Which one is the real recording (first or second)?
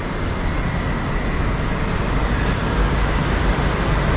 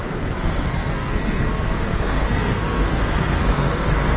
first